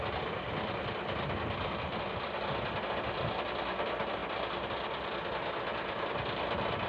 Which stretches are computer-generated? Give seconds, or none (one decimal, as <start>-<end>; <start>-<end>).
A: none